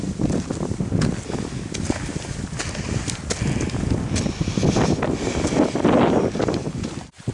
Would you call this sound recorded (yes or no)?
yes